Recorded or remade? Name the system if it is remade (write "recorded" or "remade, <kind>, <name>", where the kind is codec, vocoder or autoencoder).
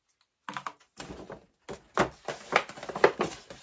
recorded